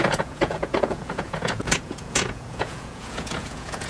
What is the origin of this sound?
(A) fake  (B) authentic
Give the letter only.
A